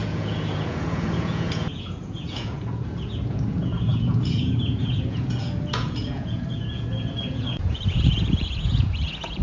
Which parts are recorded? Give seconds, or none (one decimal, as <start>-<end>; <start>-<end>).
none